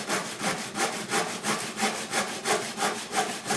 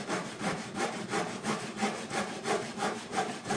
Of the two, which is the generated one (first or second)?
second